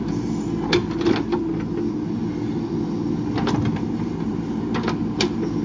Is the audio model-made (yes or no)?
no